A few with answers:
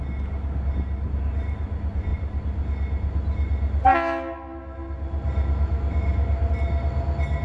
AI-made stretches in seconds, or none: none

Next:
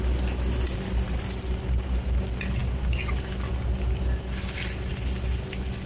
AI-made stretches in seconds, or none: none

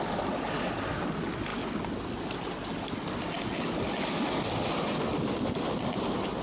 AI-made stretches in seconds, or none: none